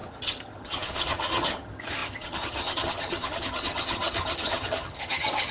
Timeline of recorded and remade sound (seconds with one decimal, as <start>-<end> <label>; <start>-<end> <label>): 0.0-5.5 remade